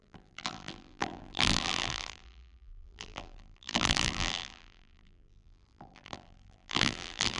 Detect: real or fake fake